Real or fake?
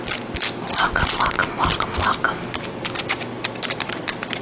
real